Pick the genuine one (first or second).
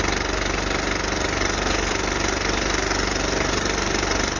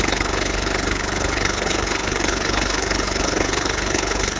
first